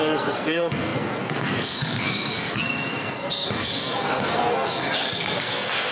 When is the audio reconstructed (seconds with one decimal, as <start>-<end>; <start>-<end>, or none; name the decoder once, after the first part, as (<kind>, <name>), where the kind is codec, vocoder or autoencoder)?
0.0-5.9 (codec, SNAC)